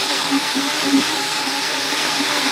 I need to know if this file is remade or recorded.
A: remade